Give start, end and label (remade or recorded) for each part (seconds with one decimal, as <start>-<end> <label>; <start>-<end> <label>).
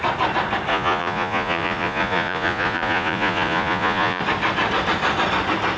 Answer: 0.0-0.7 recorded; 0.7-4.2 remade; 4.2-5.8 recorded